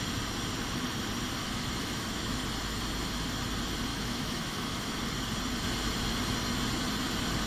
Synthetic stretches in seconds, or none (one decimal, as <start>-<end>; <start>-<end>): 1.4-2.4; 3.9-5.0